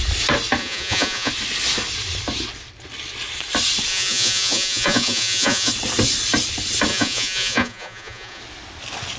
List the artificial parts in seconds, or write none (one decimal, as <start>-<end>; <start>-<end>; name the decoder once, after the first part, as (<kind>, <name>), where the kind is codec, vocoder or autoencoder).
0.6-1.3 (vocoder, Vocos); 3.9-5.7; 6.9-8.4